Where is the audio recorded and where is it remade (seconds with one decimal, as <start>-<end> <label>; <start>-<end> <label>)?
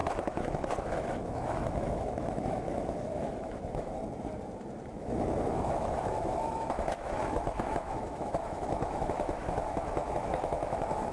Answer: 0.0-4.0 remade; 4.0-4.9 recorded; 4.9-11.1 remade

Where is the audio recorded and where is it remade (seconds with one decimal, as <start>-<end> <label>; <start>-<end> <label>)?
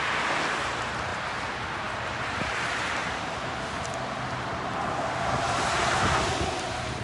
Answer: 0.0-7.0 recorded